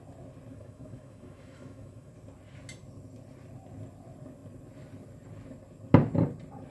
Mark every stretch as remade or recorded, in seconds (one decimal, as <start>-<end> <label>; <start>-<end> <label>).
0.0-0.5 recorded; 0.5-2.1 remade; 2.1-6.7 recorded